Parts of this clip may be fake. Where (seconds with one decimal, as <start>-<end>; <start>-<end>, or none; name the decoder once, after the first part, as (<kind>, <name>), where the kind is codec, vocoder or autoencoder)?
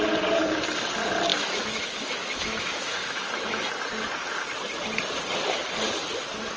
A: 1.3-3.7 (autoencoder, DAC-VAE)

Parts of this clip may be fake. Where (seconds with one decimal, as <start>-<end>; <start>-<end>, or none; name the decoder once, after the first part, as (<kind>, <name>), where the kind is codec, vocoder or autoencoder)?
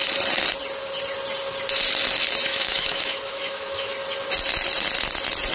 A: 2.5-3.9 (autoencoder, DAC-VAE)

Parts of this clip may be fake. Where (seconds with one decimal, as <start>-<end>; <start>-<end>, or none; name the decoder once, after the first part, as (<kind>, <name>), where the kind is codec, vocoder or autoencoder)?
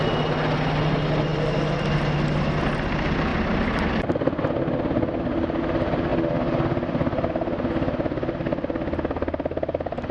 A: none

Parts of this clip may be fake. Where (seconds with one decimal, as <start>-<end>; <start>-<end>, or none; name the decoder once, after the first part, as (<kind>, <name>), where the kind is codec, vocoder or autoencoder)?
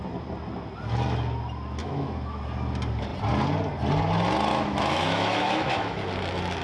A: 1.8-2.4 (autoencoder, DAC-VAE); 4.5-6.0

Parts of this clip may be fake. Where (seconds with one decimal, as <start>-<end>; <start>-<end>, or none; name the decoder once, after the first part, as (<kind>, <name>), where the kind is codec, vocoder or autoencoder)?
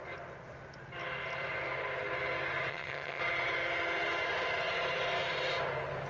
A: 2.7-3.2 (vocoder, HiFi-GAN)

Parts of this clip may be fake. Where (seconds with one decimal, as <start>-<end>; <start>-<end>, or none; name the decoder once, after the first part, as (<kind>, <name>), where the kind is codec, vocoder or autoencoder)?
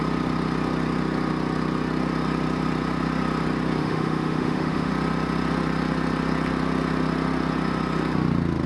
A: 3.8-4.9 (autoencoder, DAC-VAE)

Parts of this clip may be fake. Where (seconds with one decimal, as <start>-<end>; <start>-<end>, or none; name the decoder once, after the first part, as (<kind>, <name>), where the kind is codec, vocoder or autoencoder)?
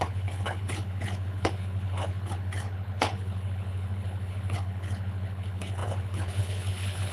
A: 0.0-7.1 (codec, HILCodec)